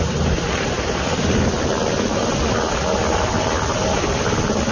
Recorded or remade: recorded